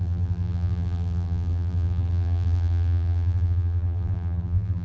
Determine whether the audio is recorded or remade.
remade